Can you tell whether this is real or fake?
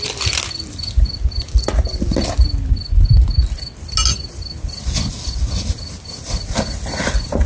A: real